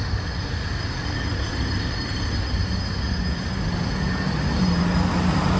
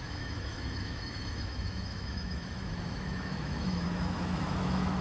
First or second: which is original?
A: first